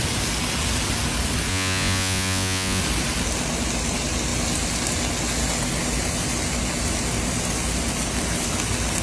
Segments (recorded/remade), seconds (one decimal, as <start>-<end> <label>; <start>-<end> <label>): 0.0-1.5 recorded; 1.5-2.8 remade; 2.8-9.0 recorded